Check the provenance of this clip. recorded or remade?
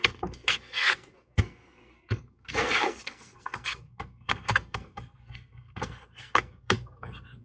remade